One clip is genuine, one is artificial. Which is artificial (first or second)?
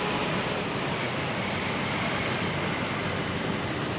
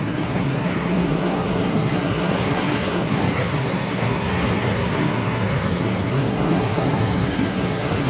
second